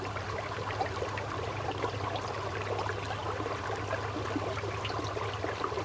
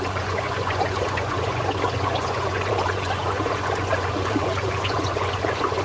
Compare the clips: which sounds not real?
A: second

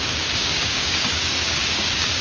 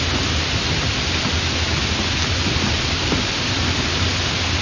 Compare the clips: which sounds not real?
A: first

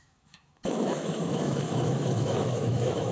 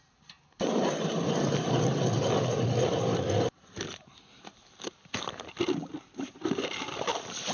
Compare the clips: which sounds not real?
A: first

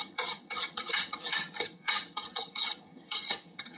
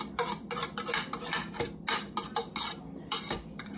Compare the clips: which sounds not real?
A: first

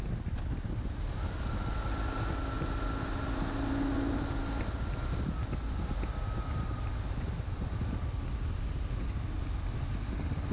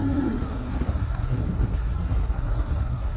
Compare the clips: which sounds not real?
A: second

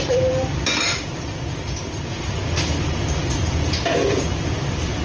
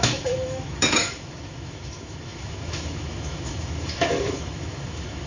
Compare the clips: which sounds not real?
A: second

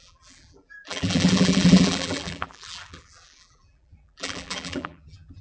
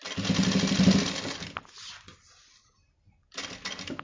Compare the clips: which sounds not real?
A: first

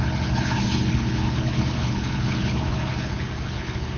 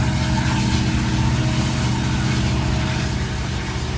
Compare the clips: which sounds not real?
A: first